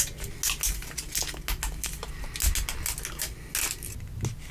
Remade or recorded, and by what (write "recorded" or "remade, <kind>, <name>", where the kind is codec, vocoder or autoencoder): recorded